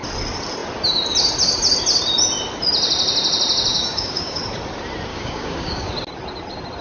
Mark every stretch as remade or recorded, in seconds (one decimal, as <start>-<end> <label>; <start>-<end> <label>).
0.0-3.7 recorded; 3.7-4.4 remade; 4.4-5.1 recorded; 5.1-5.9 remade; 5.9-6.8 recorded